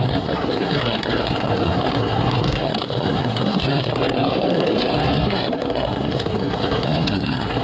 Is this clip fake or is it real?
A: fake